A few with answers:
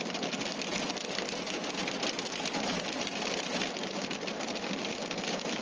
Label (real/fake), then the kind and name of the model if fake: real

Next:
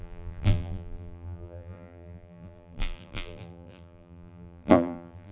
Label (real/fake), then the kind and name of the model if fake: fake, vocoder, BigVGAN v2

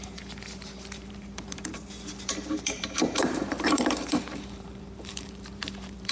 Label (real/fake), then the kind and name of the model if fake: fake, vocoder, BigVGAN v2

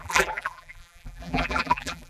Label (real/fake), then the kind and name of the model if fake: fake, vocoder, BigVGAN v2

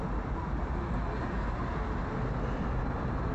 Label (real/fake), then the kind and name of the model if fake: real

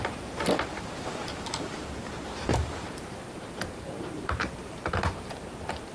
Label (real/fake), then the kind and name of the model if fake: fake, vocoder, BigVGAN v2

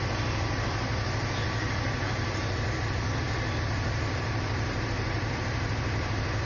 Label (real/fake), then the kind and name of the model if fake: fake, vocoder, BigVGAN v2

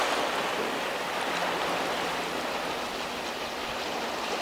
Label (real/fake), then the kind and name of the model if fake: real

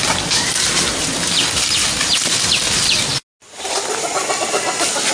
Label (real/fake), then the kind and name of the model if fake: real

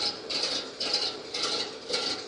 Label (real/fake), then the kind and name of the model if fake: real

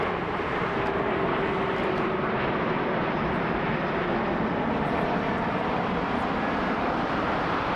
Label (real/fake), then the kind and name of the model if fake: fake, vocoder, BigVGAN v2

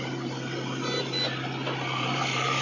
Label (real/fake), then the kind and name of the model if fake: real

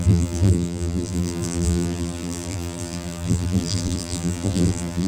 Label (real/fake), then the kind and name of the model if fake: fake, vocoder, BigVGAN v2